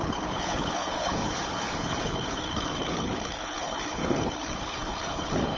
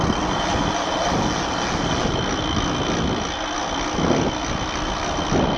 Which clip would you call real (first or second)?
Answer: second